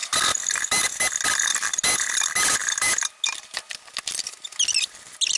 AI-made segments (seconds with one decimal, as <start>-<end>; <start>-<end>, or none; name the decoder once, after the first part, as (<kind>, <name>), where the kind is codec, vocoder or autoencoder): none